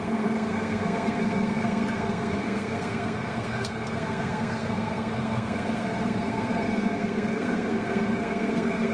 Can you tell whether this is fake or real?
fake